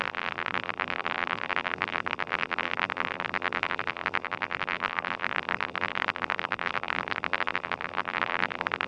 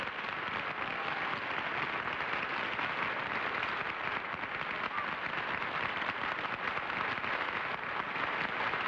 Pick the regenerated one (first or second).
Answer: first